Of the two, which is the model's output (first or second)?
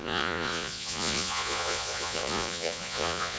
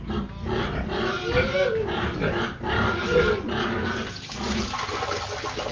first